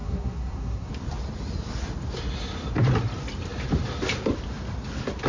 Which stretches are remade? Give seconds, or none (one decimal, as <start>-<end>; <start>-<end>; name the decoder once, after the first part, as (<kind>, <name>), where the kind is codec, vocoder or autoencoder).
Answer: 0.0-0.9 (codec, SNAC)